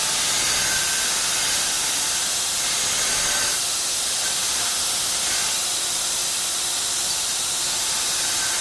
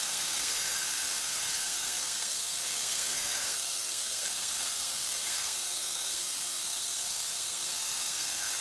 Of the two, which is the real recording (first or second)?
first